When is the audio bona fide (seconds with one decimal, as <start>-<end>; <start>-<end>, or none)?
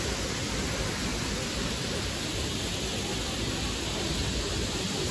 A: 0.0-1.1; 2.6-4.2